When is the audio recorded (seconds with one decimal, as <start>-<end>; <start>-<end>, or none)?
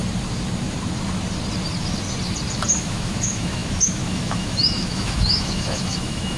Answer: 0.0-2.8